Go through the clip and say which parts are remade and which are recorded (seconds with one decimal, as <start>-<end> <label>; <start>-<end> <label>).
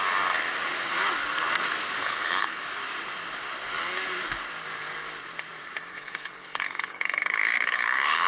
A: 0.0-2.0 recorded; 2.0-2.6 remade; 2.6-5.9 recorded; 5.9-8.3 remade